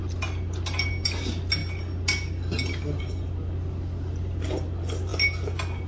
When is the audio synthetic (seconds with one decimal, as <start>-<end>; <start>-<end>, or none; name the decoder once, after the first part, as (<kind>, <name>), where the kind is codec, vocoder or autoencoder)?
none